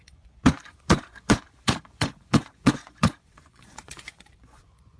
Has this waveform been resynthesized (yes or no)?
yes